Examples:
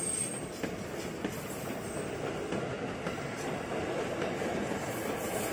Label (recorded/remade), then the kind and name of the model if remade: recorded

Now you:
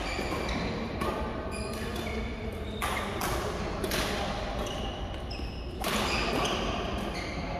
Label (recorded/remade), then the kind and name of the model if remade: recorded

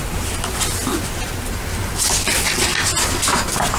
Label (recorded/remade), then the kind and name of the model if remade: recorded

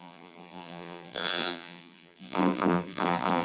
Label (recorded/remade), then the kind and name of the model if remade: remade, vocoder, BigVGAN v2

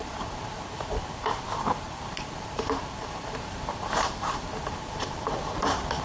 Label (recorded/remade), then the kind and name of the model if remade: remade, vocoder, BigVGAN v2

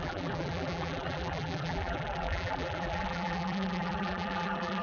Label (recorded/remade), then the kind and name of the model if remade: remade, vocoder, BigVGAN v2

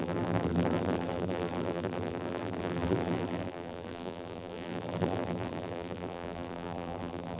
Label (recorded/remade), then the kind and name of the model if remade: remade, vocoder, BigVGAN v2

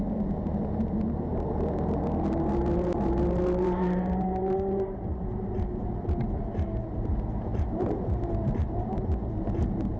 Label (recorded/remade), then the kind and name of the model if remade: remade, vocoder, BigVGAN v2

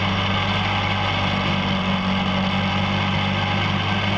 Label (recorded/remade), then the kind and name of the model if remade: recorded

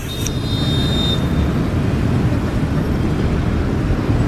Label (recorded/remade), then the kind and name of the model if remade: recorded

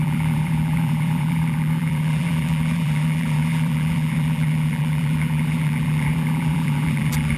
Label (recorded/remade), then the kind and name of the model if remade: remade, vocoder, BigVGAN v2